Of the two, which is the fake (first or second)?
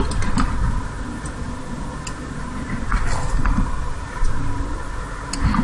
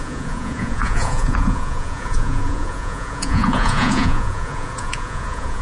second